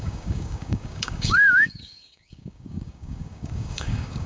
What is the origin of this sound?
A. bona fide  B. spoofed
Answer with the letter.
B